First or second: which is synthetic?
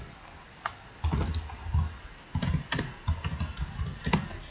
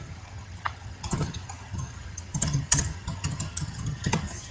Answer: second